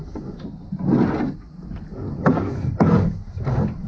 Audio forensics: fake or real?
real